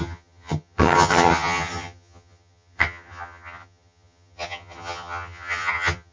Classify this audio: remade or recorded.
remade